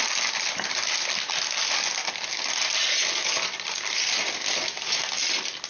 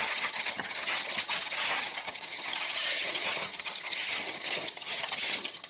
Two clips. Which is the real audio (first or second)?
first